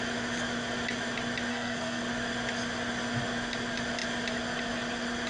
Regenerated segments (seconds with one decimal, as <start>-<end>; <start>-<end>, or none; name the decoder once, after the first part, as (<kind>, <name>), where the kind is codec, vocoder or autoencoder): 1.5-2.0 (codec, SNAC)